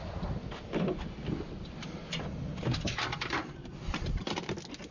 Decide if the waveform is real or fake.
real